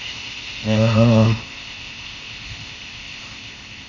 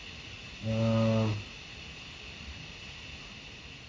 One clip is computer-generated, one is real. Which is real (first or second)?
second